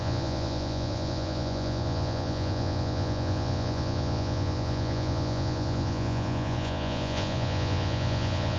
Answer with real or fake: fake